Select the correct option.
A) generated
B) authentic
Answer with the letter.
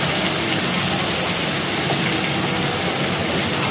B